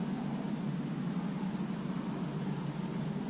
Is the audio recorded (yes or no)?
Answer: yes